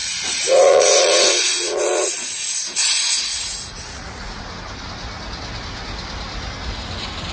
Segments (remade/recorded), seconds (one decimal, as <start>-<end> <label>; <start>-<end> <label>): 0.0-4.4 remade; 4.4-7.3 recorded